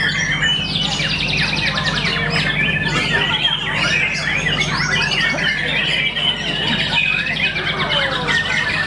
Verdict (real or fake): real